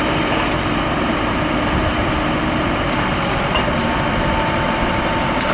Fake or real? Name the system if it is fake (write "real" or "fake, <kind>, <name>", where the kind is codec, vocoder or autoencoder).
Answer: fake, vocoder, BigVGAN v2